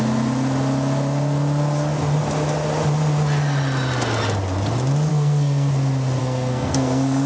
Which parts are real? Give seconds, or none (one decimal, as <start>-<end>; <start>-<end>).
0.0-5.1; 5.7-6.2